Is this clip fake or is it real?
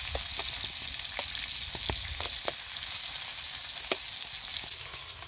real